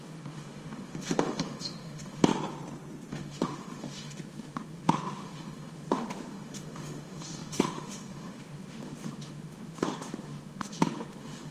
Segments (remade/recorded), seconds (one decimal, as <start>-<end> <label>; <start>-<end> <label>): 0.0-2.3 remade; 2.3-3.1 recorded; 3.1-11.5 remade